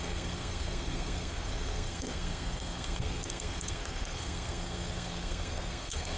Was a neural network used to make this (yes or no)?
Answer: yes